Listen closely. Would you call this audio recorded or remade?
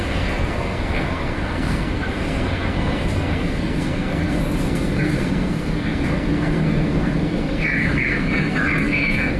remade